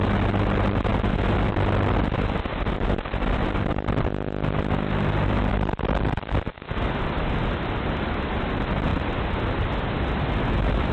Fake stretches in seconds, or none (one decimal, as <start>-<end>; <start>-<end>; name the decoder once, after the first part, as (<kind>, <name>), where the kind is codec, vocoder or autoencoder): none